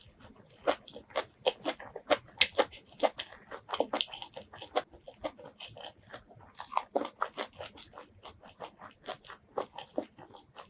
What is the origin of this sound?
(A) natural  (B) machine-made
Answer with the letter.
A